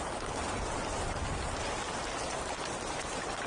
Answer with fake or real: real